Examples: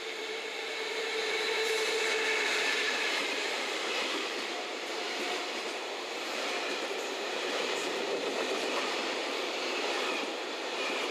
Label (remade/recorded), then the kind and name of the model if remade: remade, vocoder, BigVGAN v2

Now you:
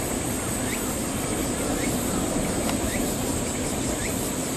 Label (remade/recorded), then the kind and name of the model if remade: remade, vocoder, BigVGAN v2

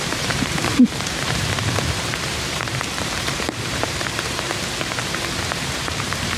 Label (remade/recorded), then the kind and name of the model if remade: remade, vocoder, BigVGAN v2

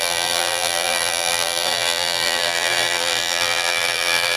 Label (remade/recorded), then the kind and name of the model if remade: remade, vocoder, BigVGAN v2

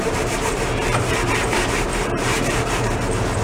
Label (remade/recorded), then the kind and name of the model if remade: remade, vocoder, BigVGAN v2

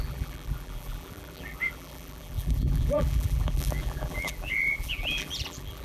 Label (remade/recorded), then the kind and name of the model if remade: remade, vocoder, BigVGAN v2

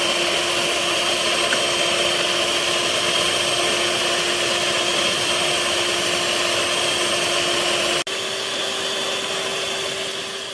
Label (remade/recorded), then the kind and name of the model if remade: recorded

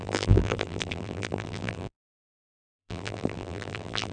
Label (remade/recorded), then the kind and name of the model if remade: remade, vocoder, BigVGAN v2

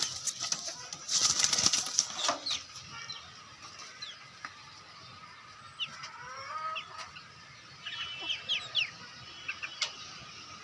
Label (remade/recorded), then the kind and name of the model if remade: recorded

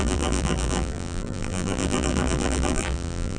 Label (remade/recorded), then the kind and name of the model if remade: remade, vocoder, BigVGAN v2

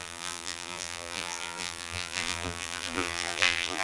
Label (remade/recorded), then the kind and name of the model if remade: remade, vocoder, BigVGAN v2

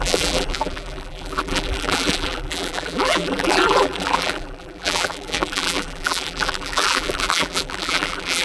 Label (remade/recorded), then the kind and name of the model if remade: remade, vocoder, BigVGAN v2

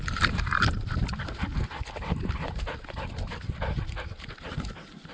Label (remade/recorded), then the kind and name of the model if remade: recorded